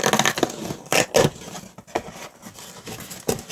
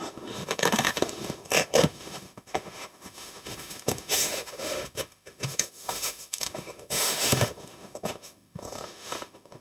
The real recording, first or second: first